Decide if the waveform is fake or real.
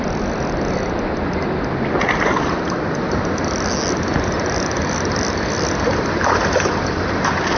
real